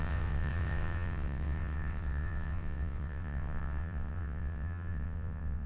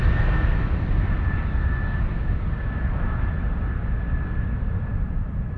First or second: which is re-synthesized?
first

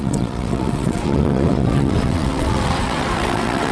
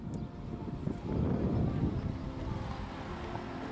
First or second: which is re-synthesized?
first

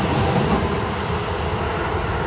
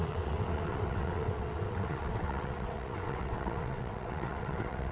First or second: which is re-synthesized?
second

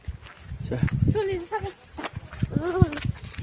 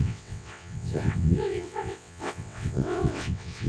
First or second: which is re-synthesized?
second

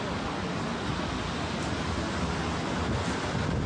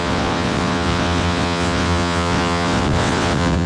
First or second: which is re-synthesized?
second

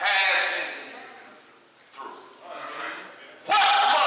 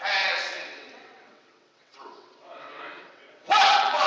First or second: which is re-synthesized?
second